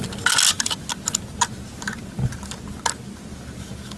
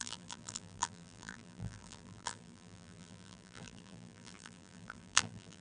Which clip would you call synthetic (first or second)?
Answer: second